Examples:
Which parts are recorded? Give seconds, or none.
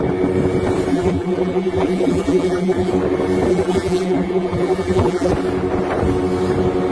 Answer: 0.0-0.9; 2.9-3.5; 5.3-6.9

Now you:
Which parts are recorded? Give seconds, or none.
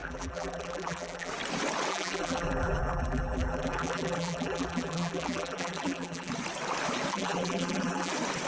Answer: 1.3-1.9; 6.3-7.1; 8.1-8.5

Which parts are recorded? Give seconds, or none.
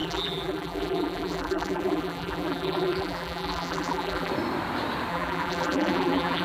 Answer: 4.3-5.1